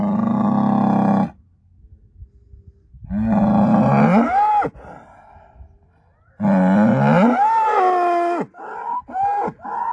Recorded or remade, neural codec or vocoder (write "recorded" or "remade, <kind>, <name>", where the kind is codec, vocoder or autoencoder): recorded